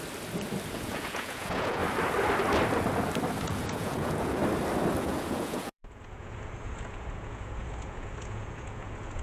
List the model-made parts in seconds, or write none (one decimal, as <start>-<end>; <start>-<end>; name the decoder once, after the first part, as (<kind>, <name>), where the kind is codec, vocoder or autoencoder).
0.7-1.8 (vocoder, Vocos); 3.4-4.4; 5.0-9.2